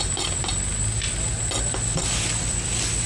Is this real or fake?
real